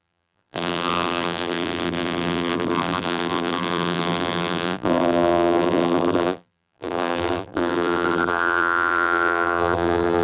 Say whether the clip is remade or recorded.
remade